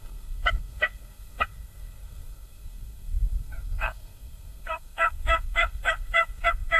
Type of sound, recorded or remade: remade